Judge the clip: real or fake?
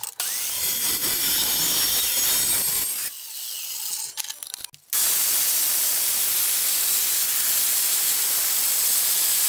real